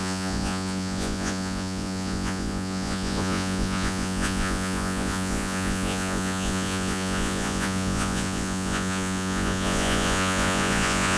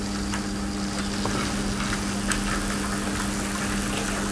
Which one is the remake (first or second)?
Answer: first